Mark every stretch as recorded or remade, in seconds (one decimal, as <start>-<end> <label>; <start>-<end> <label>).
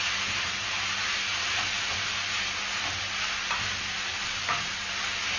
0.0-1.3 recorded; 1.3-1.9 remade; 1.9-4.1 recorded; 4.1-5.0 remade; 5.0-5.4 recorded